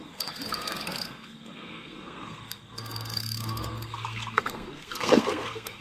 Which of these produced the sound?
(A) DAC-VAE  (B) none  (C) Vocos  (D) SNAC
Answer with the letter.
D